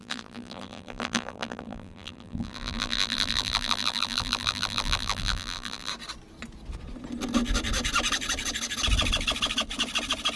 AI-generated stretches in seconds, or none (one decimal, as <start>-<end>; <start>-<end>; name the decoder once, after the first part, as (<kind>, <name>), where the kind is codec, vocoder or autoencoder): 0.0-5.9 (vocoder, BigVGAN v2)